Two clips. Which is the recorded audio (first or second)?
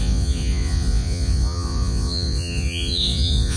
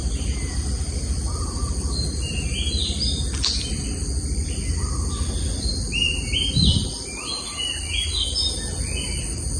second